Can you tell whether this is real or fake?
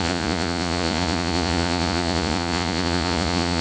fake